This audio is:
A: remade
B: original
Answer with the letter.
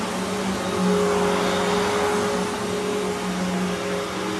B